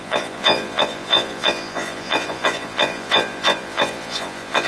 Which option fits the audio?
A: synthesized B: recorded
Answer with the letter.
A